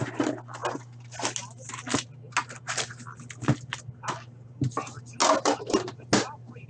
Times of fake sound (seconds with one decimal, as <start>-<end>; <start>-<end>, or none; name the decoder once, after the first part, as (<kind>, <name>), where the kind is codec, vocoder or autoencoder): none